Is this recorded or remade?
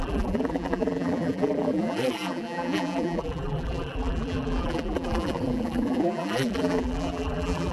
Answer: remade